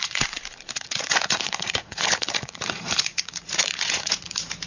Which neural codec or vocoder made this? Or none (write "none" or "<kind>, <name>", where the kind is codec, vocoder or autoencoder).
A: vocoder, Vocos